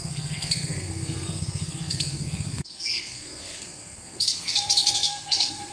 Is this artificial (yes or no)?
yes